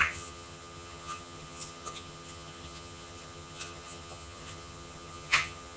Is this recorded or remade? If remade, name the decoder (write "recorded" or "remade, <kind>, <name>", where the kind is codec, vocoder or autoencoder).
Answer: remade, vocoder, HiFi-GAN